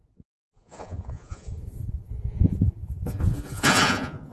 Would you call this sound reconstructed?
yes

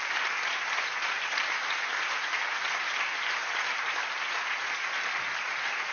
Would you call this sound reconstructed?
no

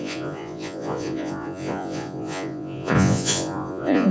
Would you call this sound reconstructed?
yes